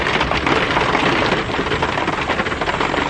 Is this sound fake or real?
real